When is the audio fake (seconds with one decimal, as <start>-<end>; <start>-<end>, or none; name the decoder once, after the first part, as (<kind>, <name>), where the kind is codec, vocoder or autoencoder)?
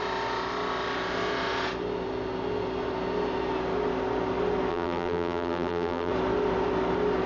4.7-6.1 (vocoder, BigVGAN v2)